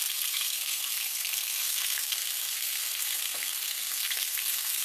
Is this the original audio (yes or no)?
no